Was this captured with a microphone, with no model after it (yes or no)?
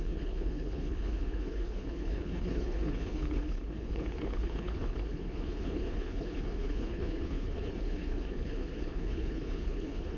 no